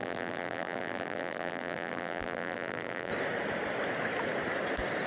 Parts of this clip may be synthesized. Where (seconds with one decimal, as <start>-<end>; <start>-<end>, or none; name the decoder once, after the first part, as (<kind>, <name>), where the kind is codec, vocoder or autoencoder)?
0.0-3.1 (vocoder, BigVGAN v2)